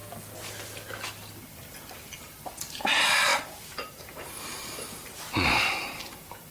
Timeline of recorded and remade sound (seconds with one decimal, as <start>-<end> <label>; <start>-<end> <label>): 0.0-1.9 recorded; 1.9-6.5 remade